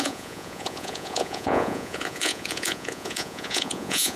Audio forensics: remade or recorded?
remade